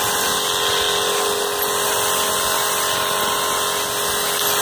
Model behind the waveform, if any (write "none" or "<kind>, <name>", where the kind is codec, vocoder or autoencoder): none